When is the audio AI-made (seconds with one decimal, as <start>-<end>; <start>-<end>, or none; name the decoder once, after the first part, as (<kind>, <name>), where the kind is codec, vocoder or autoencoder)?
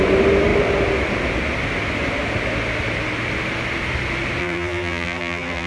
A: 4.4-5.7 (vocoder, BigVGAN v2)